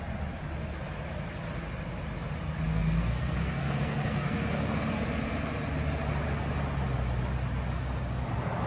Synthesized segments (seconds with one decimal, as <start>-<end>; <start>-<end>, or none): 2.7-4.8